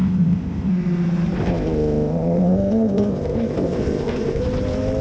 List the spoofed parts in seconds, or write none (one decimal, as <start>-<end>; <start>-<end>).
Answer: 0.0-0.7; 1.4-4.4

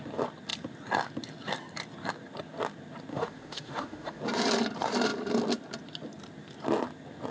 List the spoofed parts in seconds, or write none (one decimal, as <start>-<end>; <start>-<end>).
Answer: 3.1-4.2

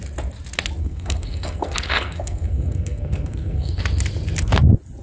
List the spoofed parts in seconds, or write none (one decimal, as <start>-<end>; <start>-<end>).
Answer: 0.8-3.8

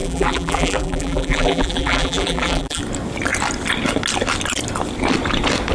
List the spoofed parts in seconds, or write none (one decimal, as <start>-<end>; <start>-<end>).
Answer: 0.0-2.8

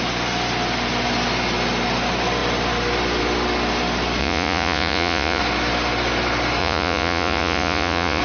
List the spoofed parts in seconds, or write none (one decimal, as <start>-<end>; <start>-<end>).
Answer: 4.2-5.4; 6.6-8.2

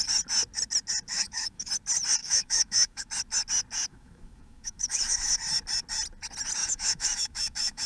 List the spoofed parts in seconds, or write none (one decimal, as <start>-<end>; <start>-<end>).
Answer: 1.1-1.7; 2.2-3.1; 3.9-5.3; 6.6-7.9

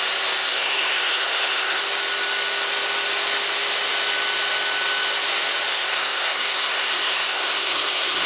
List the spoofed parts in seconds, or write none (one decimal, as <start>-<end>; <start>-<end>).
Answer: 0.5-1.8; 5.7-8.3

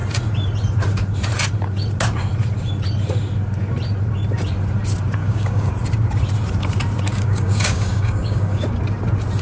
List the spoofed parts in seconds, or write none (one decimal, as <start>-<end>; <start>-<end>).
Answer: 5.2-5.7; 7.1-8.6